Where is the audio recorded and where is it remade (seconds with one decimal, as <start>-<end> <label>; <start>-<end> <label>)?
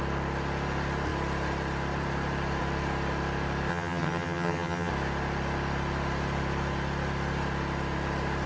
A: 0.0-3.7 recorded; 3.7-4.9 remade; 4.9-8.5 recorded